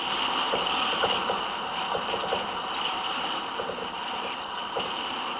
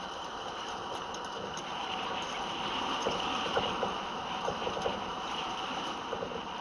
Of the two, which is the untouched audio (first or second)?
first